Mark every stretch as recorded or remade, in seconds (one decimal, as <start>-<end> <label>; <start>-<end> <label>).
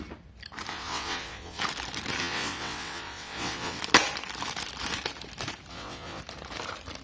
0.0-0.7 recorded; 0.7-1.6 remade; 1.6-2.2 recorded; 2.2-3.8 remade; 3.8-5.7 recorded; 5.7-6.2 remade; 6.2-7.0 recorded